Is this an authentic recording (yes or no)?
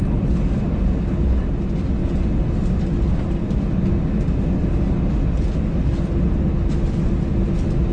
yes